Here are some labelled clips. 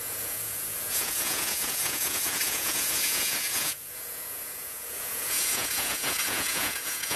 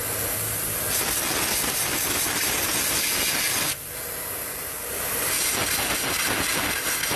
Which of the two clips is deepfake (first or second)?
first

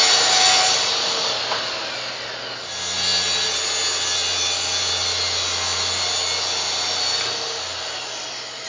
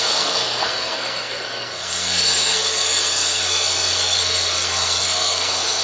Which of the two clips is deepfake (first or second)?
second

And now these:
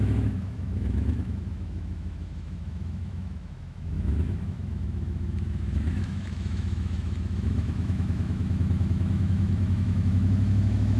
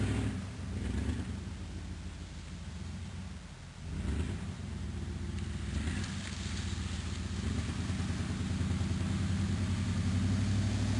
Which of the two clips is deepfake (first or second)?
first